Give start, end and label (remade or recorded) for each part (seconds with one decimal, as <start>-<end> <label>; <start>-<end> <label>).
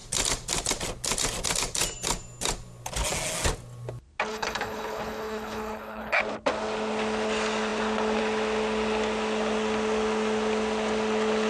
0.0-4.3 recorded; 4.3-6.2 remade; 6.2-11.5 recorded